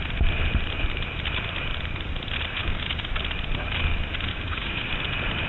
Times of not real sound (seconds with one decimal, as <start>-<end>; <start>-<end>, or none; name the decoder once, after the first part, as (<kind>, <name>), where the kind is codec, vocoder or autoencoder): 2.6-3.1 (codec, DAC); 4.3-4.9